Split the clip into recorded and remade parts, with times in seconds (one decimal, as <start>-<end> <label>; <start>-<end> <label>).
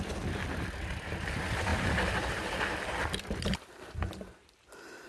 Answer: 0.0-5.1 recorded